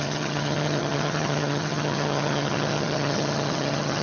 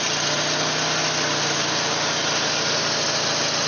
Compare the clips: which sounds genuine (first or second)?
second